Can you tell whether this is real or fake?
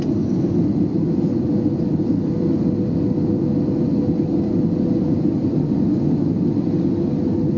real